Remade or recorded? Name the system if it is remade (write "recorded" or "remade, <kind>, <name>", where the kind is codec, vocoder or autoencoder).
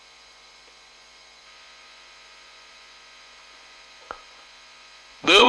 remade, vocoder, Vocos